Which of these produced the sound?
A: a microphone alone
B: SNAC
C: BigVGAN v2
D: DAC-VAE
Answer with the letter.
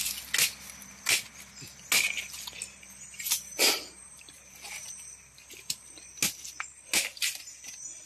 A